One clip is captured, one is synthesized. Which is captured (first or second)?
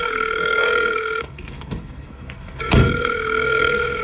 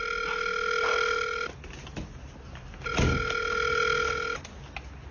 second